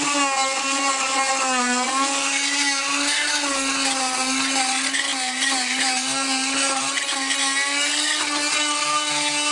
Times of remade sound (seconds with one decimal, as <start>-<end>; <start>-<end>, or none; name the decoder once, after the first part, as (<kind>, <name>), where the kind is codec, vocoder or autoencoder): none